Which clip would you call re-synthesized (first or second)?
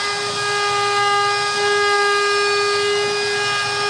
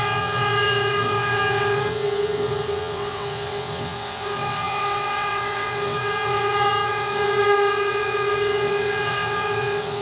second